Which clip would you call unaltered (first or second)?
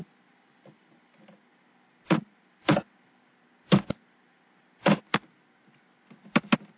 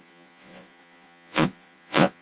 first